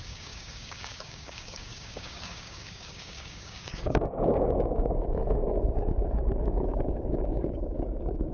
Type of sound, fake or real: fake